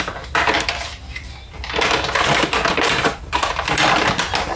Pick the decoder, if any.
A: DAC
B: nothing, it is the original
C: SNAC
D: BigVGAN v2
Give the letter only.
B